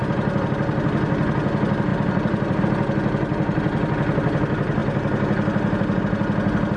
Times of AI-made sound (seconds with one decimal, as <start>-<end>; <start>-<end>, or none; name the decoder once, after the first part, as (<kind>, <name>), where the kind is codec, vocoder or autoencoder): 0.0-0.5 (vocoder, BigVGAN v2); 1.9-2.6